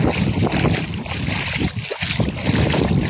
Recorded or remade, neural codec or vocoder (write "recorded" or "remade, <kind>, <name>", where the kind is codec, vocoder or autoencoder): recorded